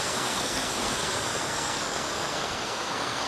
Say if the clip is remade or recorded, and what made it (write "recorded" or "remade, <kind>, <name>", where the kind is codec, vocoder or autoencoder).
remade, codec, SNAC